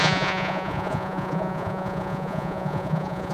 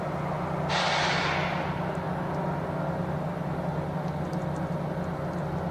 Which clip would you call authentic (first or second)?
second